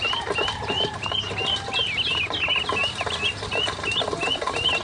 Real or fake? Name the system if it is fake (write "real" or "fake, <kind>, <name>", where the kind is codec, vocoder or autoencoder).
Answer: real